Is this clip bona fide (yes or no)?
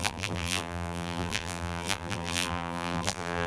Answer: no